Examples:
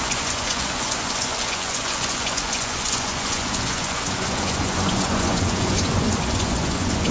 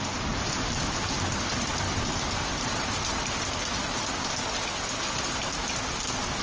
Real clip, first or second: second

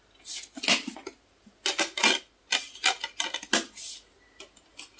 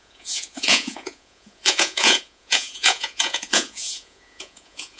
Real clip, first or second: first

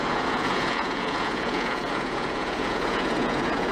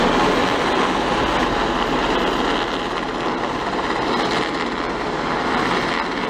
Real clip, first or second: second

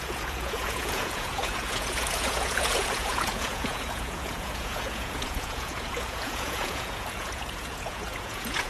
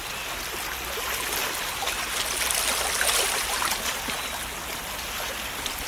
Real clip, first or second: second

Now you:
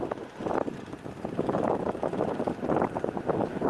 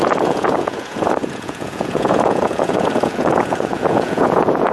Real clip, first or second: first